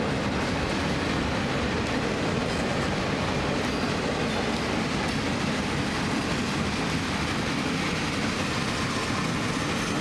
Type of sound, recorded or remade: recorded